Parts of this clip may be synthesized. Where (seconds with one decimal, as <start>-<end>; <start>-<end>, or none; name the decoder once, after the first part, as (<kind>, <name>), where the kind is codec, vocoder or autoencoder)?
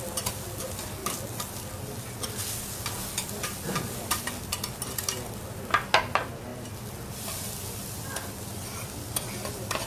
none